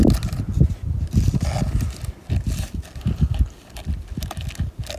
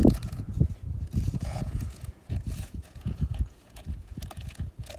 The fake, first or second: second